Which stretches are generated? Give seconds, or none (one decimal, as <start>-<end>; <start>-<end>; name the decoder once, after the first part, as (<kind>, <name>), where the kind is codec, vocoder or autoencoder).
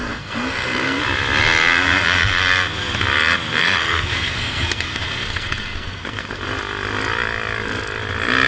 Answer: 0.0-1.0 (codec, SNAC); 3.6-6.4